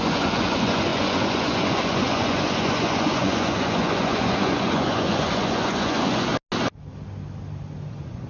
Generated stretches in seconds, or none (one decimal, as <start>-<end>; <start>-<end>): 0.0-6.3; 7.9-8.3